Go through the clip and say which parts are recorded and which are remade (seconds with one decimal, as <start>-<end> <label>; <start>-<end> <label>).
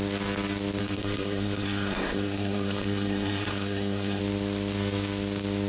0.0-0.8 recorded; 0.8-4.2 remade; 4.2-5.7 recorded